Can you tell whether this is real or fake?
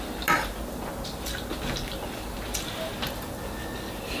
real